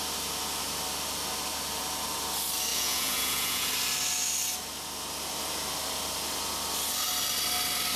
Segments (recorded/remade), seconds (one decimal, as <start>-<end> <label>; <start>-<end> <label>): 0.0-2.7 recorded; 2.7-3.7 remade; 3.7-8.0 recorded